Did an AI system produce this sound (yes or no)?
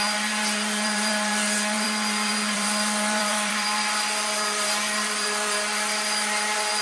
yes